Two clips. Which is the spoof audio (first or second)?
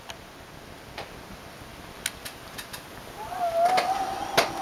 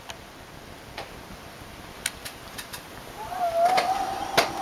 second